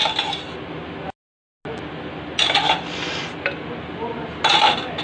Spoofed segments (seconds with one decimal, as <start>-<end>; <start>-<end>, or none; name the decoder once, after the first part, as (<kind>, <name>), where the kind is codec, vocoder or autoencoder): none